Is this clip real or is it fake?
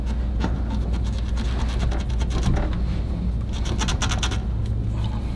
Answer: real